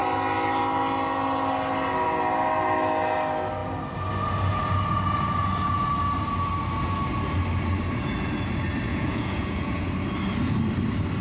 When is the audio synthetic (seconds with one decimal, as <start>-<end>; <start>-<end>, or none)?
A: 8.9-9.9